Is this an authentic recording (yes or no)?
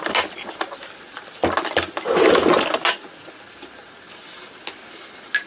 yes